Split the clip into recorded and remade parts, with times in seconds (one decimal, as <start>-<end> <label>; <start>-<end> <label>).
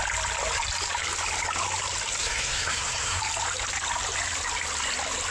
0.0-2.2 recorded; 2.2-3.2 remade; 3.2-5.3 recorded